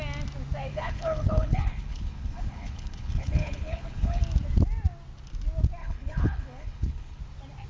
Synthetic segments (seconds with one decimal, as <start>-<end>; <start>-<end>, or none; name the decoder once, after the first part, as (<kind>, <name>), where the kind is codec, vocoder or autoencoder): 0.7-4.2 (codec, HILCodec); 5.8-7.2